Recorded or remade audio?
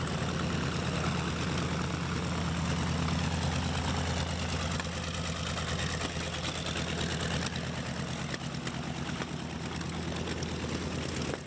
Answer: recorded